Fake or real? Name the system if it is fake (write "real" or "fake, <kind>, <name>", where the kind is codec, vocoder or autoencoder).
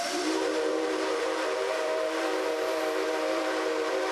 fake, vocoder, BigVGAN v2